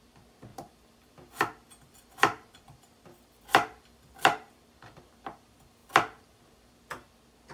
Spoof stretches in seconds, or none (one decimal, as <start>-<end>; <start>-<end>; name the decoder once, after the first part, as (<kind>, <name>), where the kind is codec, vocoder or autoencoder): 0.5-5.0 (vocoder, BigVGAN v2)